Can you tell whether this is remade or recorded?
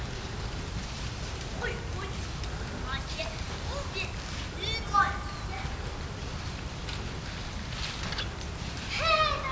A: recorded